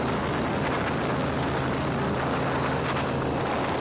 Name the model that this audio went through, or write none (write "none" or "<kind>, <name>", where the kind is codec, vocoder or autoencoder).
none